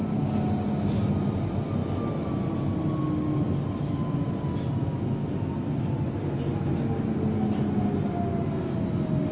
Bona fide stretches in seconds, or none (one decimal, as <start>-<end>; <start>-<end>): 0.0-9.3